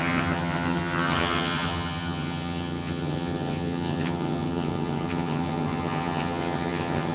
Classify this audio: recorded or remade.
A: remade